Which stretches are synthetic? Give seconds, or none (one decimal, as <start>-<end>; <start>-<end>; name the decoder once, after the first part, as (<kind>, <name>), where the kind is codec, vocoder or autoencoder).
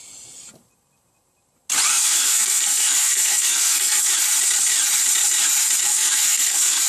1.9-4.1 (codec, SNAC); 5.9-6.9